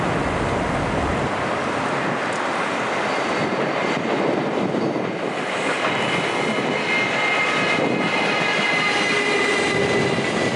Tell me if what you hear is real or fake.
real